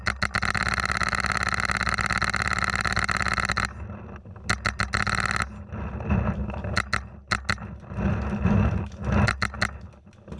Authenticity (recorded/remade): recorded